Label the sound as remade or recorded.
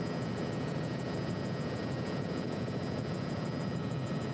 remade